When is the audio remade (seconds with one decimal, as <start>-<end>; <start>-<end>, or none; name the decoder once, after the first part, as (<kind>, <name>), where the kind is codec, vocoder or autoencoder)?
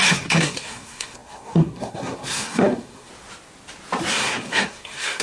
0.0-3.1 (codec, SNAC); 4.1-5.2